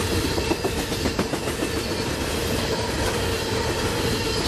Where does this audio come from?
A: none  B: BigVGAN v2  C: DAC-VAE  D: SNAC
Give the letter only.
A